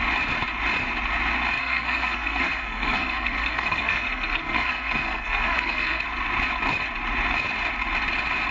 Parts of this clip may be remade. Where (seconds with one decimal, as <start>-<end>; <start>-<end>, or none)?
1.6-6.0